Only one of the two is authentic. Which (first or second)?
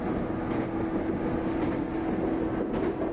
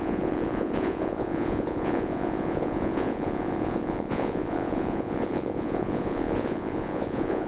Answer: first